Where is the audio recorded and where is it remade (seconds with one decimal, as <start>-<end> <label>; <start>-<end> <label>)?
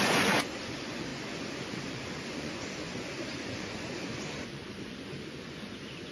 0.0-6.1 remade